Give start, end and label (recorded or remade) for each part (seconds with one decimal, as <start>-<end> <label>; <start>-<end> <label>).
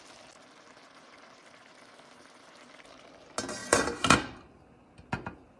0.0-3.6 recorded; 3.6-4.7 remade; 4.7-5.6 recorded